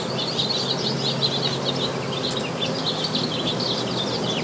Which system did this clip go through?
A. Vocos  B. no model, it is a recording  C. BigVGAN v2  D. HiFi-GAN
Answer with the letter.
B